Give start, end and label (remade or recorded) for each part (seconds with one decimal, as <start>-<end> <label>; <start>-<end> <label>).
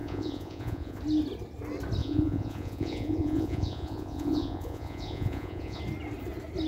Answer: 0.0-1.0 remade; 1.0-2.0 recorded; 2.0-5.8 remade; 5.8-6.7 recorded